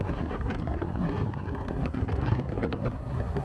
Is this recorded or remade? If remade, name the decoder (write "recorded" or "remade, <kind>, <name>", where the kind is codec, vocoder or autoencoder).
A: remade, codec, SNAC